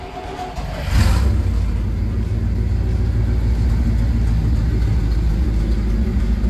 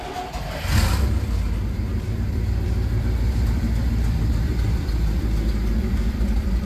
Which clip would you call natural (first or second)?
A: first